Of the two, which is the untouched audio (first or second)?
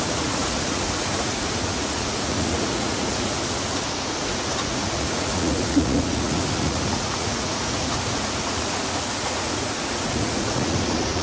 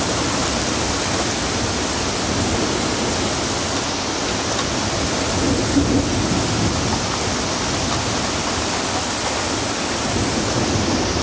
second